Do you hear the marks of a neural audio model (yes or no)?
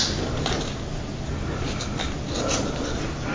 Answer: no